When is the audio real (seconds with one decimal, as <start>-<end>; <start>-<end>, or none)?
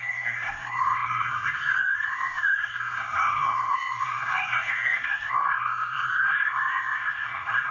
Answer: none